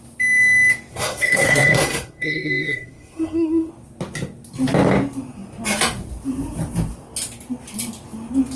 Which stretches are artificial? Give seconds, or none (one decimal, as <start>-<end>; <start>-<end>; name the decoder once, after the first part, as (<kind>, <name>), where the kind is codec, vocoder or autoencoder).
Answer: 0.9-3.7 (codec, SNAC)